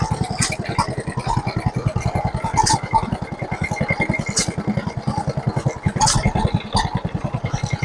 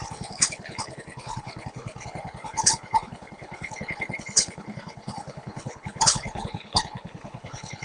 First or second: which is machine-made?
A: second